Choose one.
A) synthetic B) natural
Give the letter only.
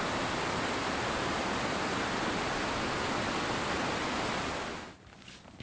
B